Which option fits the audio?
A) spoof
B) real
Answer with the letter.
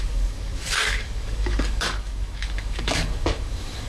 A